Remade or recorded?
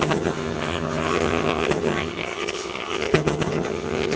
remade